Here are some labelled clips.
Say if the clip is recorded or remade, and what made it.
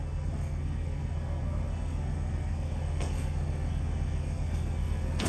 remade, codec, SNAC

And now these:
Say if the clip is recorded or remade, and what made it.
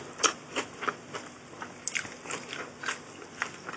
recorded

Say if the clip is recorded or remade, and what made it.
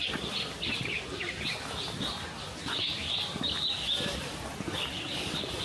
recorded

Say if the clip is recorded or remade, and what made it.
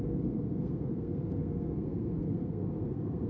remade, codec, SNAC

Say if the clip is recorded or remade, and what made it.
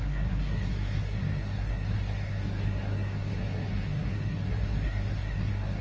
remade, codec, SNAC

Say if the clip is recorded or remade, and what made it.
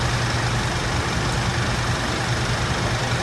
recorded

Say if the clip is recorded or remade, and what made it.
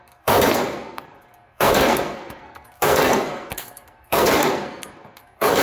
remade, codec, SNAC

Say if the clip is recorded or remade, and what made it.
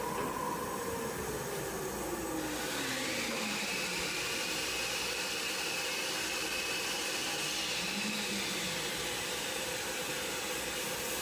recorded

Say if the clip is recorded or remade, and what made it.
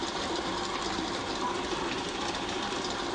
recorded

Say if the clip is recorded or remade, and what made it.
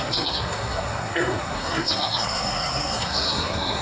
remade, codec, SNAC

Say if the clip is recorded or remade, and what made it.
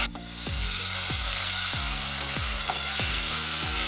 remade, codec, SNAC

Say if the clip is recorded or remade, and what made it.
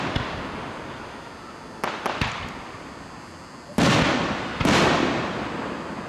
recorded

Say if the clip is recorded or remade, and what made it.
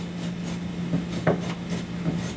recorded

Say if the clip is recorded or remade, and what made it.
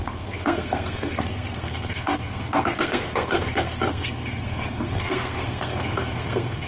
remade, codec, SNAC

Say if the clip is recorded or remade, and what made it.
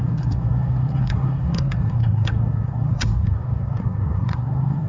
remade, codec, SNAC